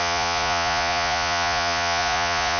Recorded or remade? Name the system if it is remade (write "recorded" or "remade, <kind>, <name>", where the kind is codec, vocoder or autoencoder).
remade, vocoder, Vocos